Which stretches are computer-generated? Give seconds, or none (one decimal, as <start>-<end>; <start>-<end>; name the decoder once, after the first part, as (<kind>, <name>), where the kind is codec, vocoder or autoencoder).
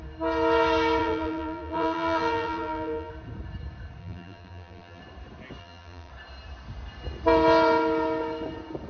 1.0-3.1 (vocoder, BigVGAN v2); 4.0-5.0; 5.6-6.1